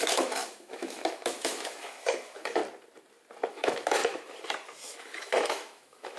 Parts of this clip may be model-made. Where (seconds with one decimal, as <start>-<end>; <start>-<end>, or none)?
0.0-2.6; 3.5-4.0; 4.9-6.2